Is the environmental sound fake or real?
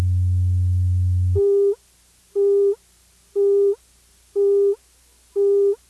real